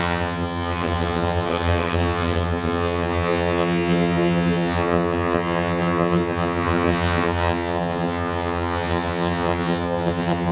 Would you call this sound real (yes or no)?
no